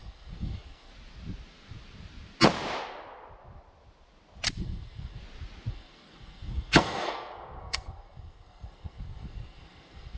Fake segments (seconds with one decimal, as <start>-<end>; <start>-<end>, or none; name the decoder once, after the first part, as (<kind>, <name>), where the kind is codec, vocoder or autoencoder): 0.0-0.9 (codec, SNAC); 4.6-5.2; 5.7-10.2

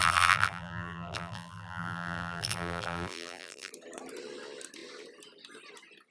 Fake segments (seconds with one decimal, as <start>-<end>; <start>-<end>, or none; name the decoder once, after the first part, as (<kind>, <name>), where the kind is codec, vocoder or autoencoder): 0.0-3.7 (vocoder, BigVGAN v2)

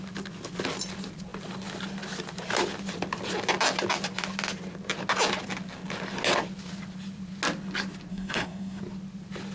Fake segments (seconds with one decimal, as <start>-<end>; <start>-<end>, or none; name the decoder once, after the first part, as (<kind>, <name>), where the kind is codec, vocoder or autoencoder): 8.1-8.8 (codec, SNAC)

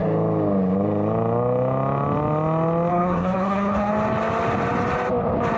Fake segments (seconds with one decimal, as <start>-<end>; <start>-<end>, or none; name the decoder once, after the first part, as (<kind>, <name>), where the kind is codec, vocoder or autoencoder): 2.9-3.9 (codec, SNAC)

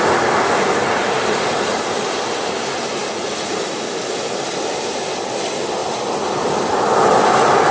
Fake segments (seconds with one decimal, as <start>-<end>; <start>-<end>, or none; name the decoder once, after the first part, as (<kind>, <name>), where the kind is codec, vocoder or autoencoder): none

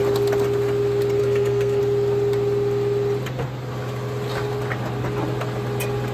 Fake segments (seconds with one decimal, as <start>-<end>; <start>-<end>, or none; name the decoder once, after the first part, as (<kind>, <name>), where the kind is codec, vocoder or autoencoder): 1.2-1.8 (codec, SNAC)

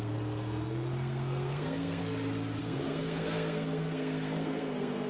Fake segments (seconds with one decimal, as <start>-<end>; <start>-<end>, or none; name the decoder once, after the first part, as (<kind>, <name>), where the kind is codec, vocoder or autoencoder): 0.0-2.0 (codec, SNAC); 2.6-5.1